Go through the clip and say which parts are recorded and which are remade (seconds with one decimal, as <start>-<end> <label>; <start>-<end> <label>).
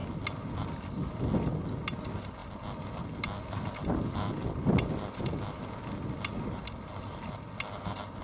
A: 0.0-8.2 recorded